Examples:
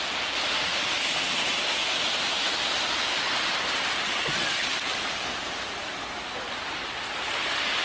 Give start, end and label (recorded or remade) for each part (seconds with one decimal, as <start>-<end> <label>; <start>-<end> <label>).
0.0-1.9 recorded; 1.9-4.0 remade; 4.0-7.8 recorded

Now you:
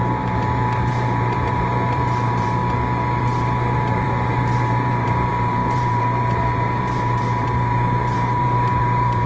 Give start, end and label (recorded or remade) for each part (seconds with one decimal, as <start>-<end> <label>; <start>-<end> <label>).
0.0-2.6 remade; 2.6-3.2 recorded; 3.2-9.3 remade

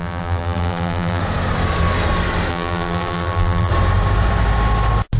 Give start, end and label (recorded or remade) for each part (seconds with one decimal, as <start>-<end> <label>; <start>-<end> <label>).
0.0-1.2 remade; 1.2-2.5 recorded; 2.5-3.7 remade; 3.7-5.2 recorded